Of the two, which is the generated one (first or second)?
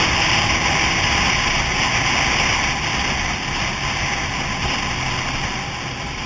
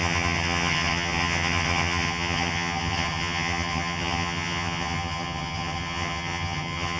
second